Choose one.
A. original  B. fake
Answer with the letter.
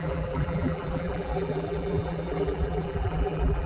B